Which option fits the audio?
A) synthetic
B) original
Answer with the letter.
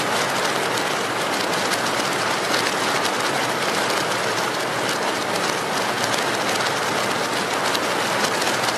B